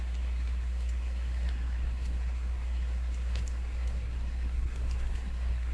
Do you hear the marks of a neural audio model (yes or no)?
yes